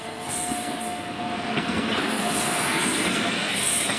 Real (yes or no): no